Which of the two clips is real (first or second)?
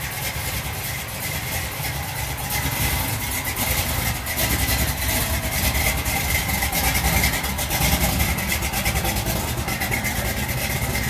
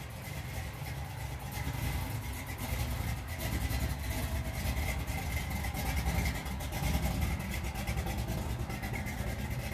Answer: second